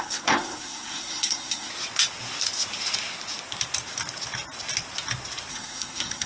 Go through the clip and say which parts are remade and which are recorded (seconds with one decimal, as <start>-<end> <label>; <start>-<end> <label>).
0.0-1.7 remade; 1.7-5.5 recorded; 5.5-6.3 remade